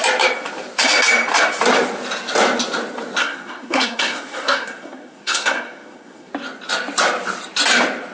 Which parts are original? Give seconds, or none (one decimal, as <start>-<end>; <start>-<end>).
0.0-3.2; 6.3-8.1